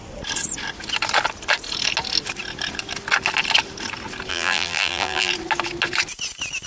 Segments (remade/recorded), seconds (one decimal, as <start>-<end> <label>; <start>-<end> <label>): 0.0-4.3 recorded; 4.3-5.3 remade; 5.3-6.7 recorded